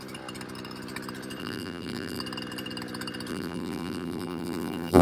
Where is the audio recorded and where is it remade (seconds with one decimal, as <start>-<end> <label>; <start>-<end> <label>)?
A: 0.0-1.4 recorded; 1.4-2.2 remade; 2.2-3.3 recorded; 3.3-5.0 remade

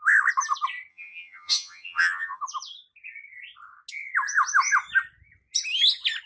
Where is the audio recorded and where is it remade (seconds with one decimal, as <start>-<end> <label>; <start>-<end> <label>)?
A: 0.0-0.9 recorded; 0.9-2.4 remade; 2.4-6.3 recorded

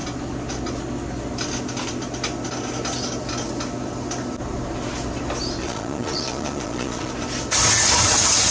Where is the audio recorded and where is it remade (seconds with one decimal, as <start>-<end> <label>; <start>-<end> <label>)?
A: 0.0-5.6 recorded; 5.6-7.1 remade; 7.1-8.5 recorded